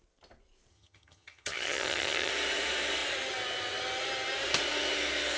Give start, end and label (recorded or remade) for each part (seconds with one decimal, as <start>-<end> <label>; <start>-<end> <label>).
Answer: 0.0-0.7 recorded; 0.7-2.3 remade; 2.3-5.4 recorded